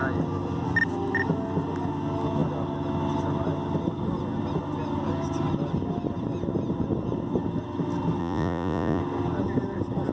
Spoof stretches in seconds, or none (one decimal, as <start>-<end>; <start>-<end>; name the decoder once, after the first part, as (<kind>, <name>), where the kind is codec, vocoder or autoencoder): 8.2-9.0 (vocoder, Vocos)